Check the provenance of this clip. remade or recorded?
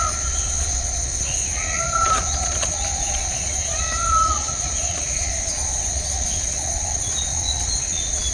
remade